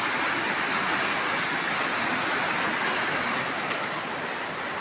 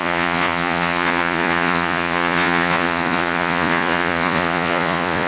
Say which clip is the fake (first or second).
second